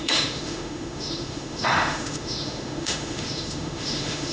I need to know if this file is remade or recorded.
remade